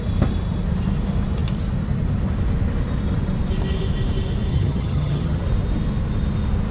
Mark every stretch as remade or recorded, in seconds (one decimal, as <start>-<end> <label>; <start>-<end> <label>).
0.0-4.5 recorded; 4.5-5.4 remade; 5.4-6.7 recorded